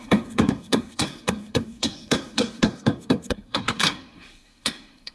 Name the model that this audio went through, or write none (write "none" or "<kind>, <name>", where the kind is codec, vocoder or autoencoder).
codec, SNAC